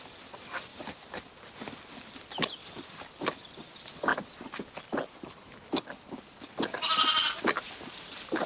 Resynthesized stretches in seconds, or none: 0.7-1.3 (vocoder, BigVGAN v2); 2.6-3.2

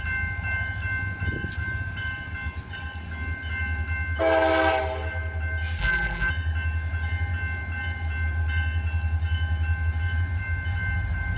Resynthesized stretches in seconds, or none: 5.8-6.3 (vocoder, BigVGAN v2)

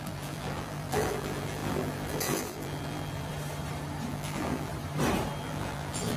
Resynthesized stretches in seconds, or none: 0.0-3.3 (vocoder, BigVGAN v2); 4.1-4.7; 5.4-6.2